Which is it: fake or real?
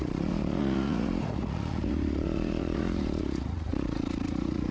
fake